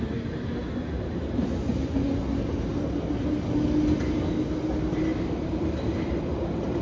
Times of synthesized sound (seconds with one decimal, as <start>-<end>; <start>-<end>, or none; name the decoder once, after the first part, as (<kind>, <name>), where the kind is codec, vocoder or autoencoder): 5.1-6.8 (vocoder, BigVGAN v2)